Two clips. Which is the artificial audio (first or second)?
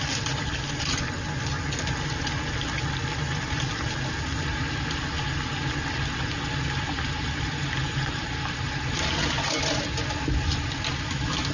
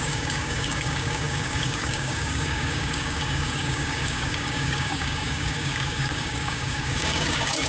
second